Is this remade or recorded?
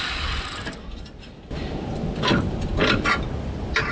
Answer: recorded